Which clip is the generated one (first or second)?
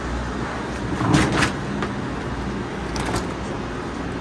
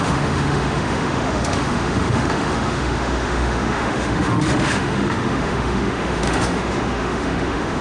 second